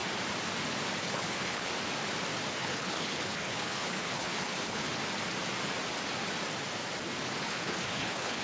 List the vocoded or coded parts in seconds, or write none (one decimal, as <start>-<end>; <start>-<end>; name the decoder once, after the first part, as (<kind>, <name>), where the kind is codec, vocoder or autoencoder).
1.0-1.7 (codec, HILCodec); 2.5-4.9; 7.4-8.4